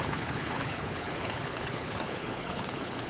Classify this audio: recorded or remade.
remade